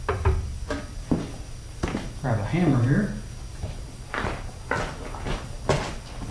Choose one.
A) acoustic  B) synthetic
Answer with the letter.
A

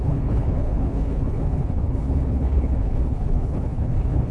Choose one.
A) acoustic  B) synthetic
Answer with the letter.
B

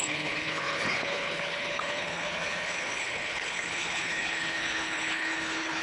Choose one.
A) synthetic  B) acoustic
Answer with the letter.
A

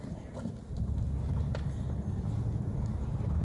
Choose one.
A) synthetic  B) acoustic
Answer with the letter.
B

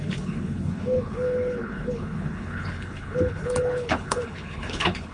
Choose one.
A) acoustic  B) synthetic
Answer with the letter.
B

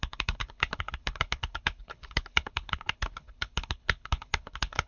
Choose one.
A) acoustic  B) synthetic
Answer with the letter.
B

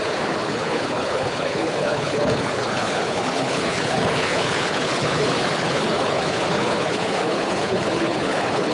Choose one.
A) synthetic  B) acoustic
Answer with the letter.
A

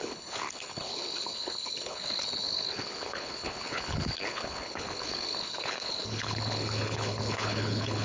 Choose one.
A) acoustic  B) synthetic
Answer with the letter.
B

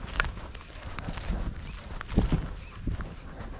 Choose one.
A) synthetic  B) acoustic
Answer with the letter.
B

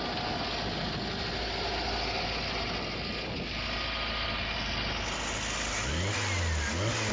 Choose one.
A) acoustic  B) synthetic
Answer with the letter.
A